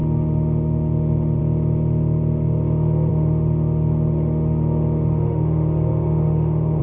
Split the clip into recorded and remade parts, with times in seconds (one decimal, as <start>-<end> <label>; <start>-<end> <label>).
0.0-1.4 remade; 1.4-3.1 recorded; 3.1-6.8 remade